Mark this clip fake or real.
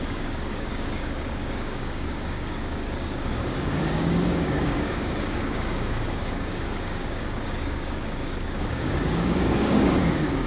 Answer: fake